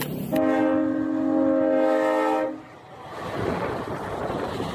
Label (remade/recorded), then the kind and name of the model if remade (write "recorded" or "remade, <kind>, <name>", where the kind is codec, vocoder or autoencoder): recorded